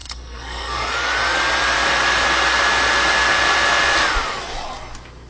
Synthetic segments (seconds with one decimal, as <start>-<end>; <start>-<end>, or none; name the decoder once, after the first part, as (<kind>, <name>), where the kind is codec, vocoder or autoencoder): 0.0-0.9 (codec, SNAC)